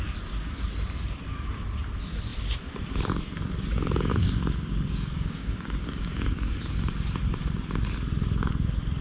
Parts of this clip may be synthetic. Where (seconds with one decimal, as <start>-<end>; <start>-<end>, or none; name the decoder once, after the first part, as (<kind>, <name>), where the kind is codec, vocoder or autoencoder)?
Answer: 4.1-6.3 (codec, DAC)